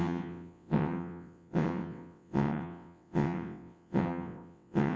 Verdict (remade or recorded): remade